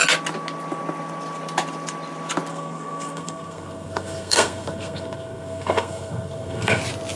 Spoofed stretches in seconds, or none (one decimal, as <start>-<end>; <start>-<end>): 2.5-6.8